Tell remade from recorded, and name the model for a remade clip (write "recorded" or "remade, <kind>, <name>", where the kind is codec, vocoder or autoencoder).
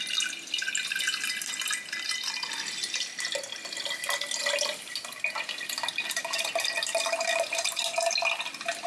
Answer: recorded